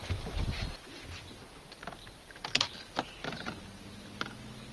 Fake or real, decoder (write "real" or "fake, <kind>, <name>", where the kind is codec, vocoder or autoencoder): real